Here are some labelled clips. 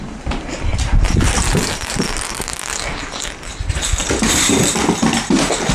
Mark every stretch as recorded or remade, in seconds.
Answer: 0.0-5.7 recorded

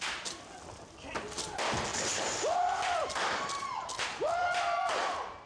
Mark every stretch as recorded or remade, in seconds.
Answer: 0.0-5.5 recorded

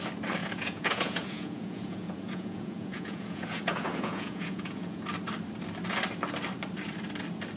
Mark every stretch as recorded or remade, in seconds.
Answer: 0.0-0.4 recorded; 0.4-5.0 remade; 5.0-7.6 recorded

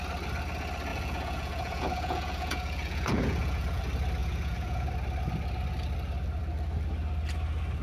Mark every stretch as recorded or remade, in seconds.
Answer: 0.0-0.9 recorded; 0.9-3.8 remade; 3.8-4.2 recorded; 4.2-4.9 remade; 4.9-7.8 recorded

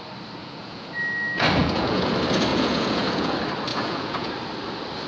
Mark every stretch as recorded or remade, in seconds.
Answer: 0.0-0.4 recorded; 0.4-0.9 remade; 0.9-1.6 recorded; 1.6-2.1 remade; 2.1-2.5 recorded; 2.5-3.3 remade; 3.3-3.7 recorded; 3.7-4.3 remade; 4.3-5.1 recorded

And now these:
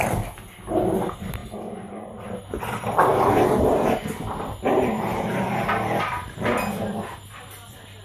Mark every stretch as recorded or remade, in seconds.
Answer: 0.0-8.0 recorded

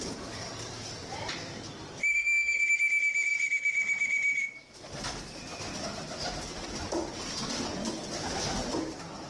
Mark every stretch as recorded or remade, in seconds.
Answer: 0.0-2.0 recorded; 2.0-2.6 remade; 2.6-9.3 recorded

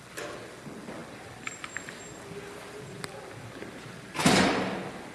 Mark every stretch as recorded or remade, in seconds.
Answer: 0.0-5.1 recorded